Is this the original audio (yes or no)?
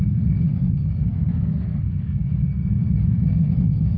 no